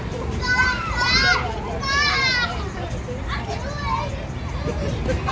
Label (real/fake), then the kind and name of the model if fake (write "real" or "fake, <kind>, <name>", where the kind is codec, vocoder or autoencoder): real